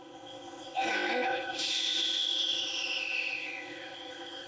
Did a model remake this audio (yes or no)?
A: yes